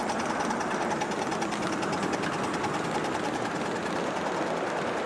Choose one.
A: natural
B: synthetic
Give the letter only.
A